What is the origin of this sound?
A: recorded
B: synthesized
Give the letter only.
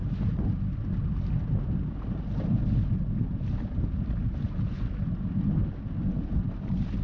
A